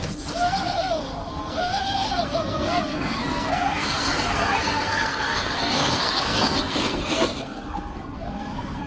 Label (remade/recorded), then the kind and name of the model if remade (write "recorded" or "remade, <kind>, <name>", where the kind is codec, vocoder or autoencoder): remade, codec, SNAC